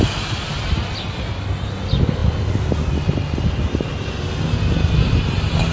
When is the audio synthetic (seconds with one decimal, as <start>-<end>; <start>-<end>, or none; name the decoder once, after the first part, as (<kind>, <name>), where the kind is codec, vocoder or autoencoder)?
none